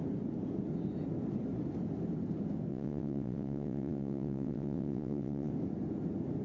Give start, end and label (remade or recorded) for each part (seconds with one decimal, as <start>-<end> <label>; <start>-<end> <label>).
0.0-2.7 recorded; 2.7-5.5 remade; 5.5-6.4 recorded